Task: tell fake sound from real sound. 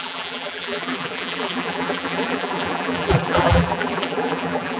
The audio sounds fake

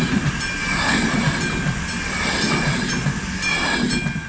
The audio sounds real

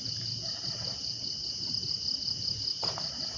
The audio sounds real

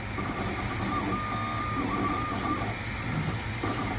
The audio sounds real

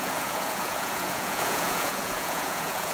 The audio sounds fake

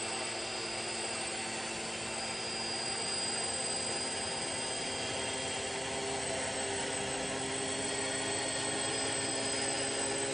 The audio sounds real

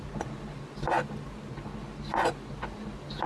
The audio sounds real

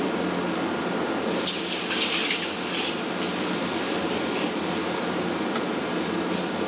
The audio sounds real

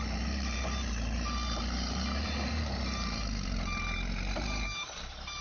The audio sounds fake